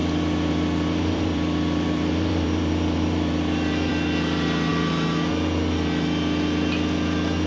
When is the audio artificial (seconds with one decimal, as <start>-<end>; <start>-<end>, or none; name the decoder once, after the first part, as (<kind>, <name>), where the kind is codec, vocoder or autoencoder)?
0.0-3.9 (vocoder, BigVGAN v2)